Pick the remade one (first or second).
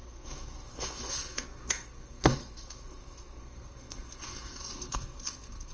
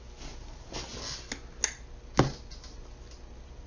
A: first